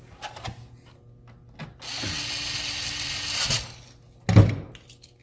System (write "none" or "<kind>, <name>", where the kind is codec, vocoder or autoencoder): none